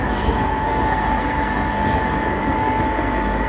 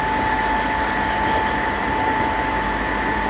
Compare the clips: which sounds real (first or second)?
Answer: second